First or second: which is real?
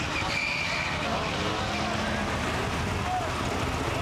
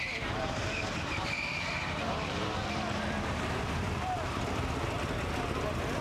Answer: first